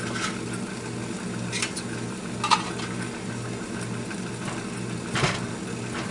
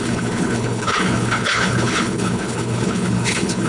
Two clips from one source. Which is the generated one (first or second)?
second